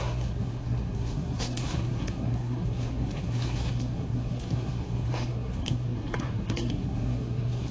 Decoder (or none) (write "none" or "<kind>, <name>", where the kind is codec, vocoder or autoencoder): codec, SNAC